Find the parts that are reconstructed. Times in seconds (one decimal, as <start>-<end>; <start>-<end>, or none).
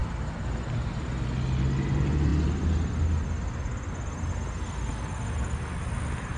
0.0-1.2